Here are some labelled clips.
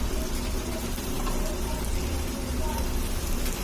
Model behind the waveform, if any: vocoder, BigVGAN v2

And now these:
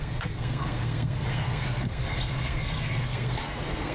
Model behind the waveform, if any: codec, SNAC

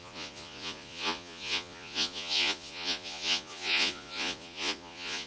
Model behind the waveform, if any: vocoder, Vocos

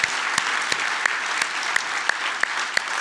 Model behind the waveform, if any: none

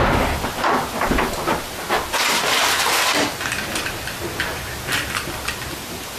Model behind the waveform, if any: none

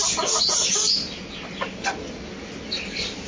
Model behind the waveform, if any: none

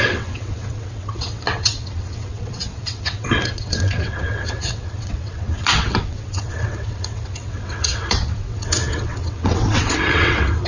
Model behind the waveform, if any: vocoder, WaveNeXt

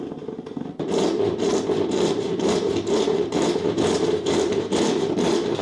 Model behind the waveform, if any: vocoder, BigVGAN v2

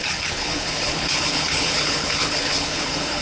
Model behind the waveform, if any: codec, HILCodec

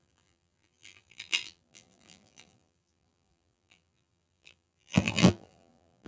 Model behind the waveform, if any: vocoder, BigVGAN v2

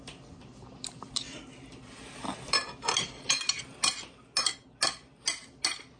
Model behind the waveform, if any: none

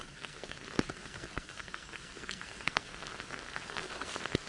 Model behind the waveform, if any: codec, SNAC